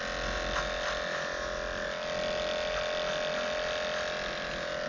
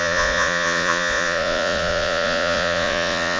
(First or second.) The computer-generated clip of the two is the second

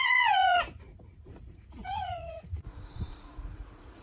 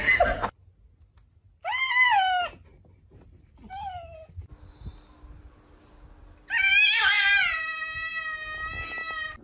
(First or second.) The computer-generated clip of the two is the first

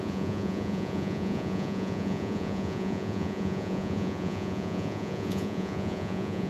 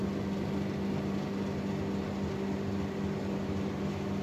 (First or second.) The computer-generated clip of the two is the first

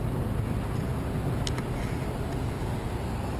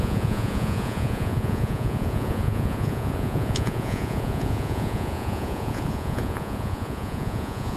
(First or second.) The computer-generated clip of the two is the second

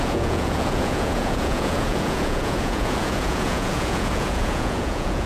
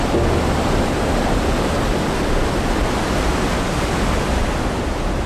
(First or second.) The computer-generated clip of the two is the first